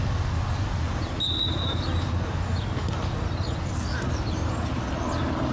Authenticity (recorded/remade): recorded